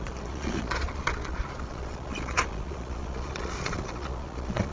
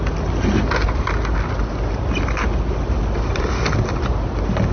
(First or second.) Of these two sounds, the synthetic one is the first